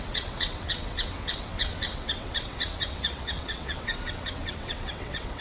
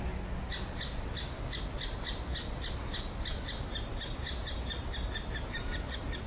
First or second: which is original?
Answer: second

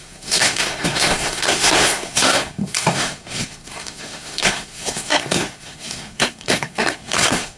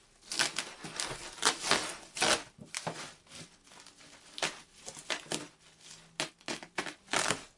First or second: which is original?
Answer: second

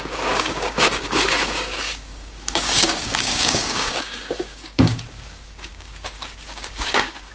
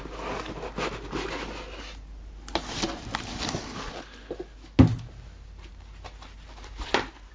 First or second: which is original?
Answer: second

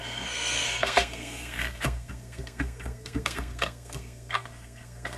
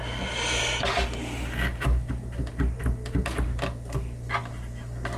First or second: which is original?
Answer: second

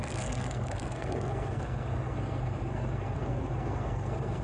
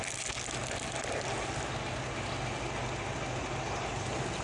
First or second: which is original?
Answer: second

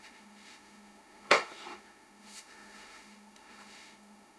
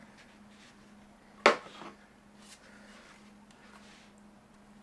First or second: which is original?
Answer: second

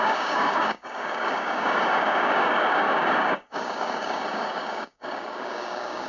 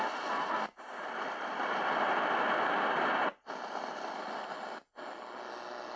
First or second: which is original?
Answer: second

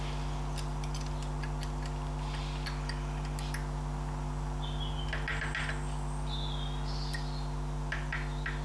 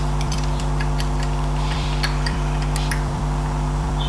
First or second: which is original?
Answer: first